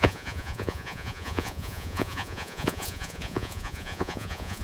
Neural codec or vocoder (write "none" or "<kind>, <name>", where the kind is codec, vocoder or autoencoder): vocoder, Vocos